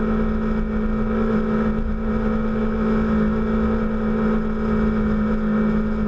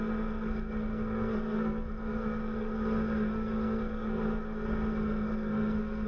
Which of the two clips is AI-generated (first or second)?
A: second